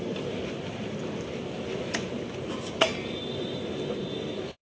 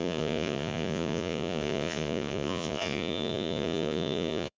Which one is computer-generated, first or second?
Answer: second